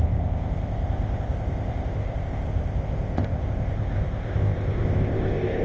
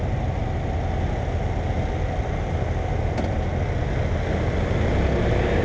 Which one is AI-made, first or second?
first